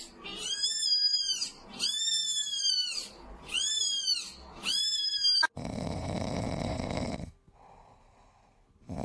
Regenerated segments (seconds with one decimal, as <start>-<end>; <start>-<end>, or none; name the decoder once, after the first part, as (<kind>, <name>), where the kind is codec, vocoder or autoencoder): 4.8-5.5 (autoencoder, DAC-VAE)